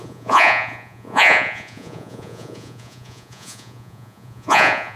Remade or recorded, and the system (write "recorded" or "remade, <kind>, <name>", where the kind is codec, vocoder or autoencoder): remade, vocoder, Vocos